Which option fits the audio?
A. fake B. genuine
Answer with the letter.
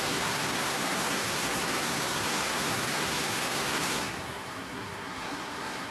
A